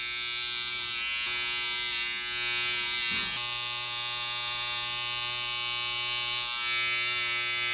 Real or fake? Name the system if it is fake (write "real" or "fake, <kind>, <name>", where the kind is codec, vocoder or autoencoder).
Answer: real